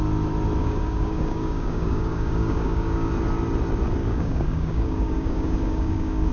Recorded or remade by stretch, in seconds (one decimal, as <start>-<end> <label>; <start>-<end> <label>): 0.0-0.6 recorded; 0.6-3.1 remade; 3.1-4.0 recorded; 4.0-6.3 remade

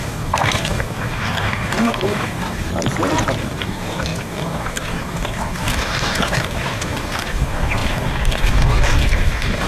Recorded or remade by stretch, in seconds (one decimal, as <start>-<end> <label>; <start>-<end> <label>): 0.0-2.7 remade; 2.7-3.4 recorded; 3.4-9.7 remade

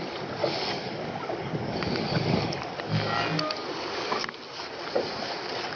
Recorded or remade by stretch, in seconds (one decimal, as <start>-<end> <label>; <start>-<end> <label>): 0.0-0.4 recorded; 0.4-2.7 remade; 2.7-5.8 recorded

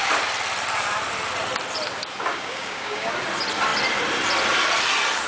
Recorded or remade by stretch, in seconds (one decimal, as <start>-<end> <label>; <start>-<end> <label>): 0.0-2.3 recorded; 2.3-3.1 remade; 3.1-5.3 recorded

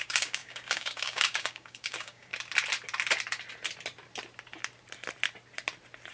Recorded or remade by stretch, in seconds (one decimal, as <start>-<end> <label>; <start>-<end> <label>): 0.0-2.3 remade; 2.3-6.1 recorded

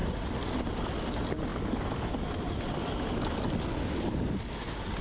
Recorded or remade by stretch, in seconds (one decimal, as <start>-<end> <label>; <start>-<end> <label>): 0.0-5.0 recorded